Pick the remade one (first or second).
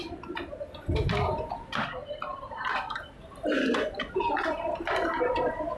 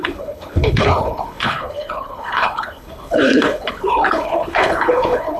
second